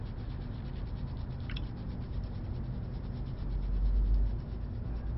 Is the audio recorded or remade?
recorded